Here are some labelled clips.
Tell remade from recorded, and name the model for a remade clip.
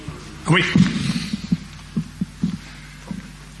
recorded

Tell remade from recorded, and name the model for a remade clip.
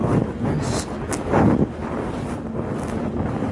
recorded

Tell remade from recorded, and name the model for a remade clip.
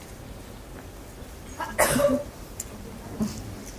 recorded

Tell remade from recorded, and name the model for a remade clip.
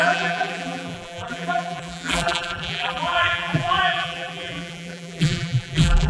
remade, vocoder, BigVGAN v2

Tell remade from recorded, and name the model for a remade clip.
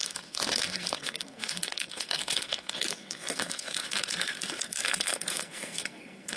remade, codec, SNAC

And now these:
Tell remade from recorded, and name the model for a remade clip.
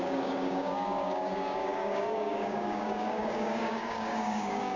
remade, codec, DAC